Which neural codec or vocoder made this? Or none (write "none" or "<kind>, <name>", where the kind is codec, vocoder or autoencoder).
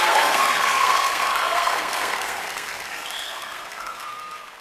codec, SNAC